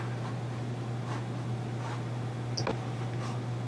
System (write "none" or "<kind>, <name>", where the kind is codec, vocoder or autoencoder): none